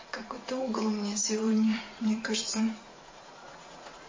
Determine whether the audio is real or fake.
fake